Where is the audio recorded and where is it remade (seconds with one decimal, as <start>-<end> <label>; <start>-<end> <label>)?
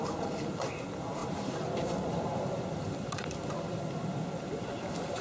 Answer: 0.0-1.2 recorded; 1.2-4.3 remade; 4.3-5.2 recorded